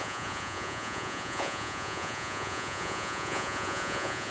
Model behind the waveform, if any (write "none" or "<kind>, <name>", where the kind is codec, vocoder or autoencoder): vocoder, Vocos